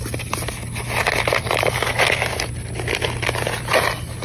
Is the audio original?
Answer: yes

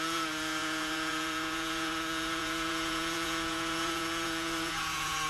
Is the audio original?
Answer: no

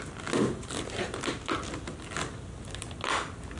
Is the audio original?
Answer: yes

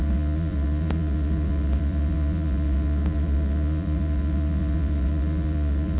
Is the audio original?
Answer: no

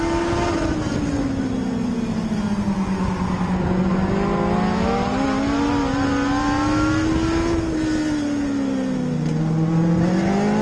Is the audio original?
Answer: yes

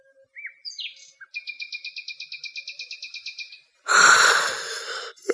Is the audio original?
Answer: yes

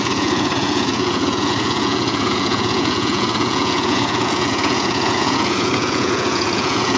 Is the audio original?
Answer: no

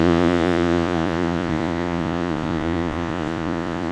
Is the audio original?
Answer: no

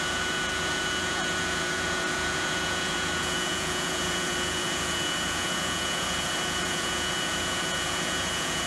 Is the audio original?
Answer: no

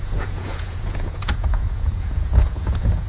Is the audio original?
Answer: no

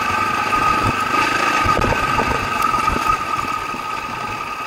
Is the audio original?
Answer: yes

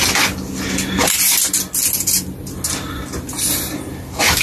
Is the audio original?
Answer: yes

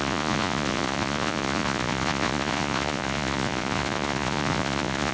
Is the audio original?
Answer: no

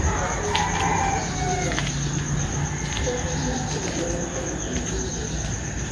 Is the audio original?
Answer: yes